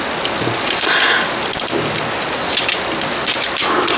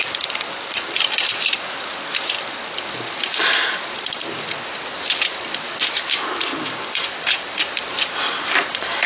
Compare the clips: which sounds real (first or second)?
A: first